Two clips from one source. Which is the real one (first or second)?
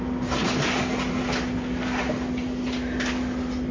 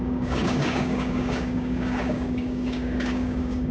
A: first